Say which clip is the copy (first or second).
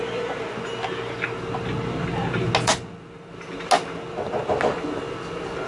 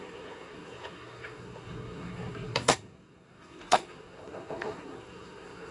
second